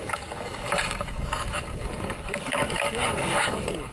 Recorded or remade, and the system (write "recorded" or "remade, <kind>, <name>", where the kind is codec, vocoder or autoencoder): remade, codec, DAC